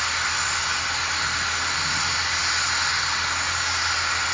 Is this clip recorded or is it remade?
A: recorded